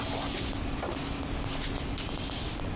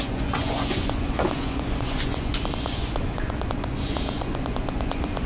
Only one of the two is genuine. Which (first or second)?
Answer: first